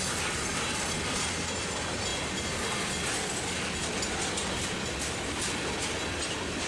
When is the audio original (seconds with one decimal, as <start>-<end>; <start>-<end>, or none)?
0.0-6.7